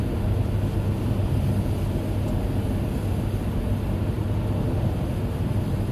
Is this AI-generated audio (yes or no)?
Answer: no